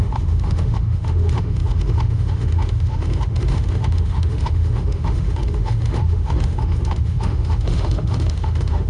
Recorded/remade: remade